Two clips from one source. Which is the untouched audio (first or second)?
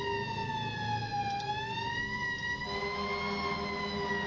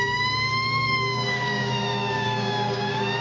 first